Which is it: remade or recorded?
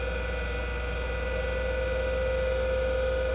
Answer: recorded